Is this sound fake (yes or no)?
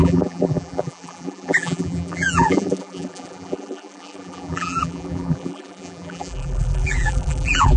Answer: yes